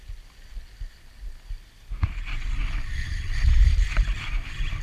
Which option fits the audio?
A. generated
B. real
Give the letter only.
B